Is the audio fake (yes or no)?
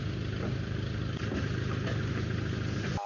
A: no